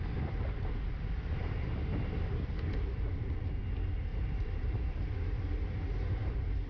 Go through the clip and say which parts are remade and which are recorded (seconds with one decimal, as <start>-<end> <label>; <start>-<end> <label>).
0.0-4.1 recorded; 4.1-4.9 remade; 4.9-6.7 recorded